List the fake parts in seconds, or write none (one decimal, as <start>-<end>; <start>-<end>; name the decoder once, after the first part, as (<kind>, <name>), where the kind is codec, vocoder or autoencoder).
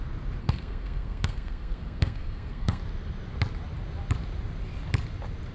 0.4-2.8 (codec, SNAC)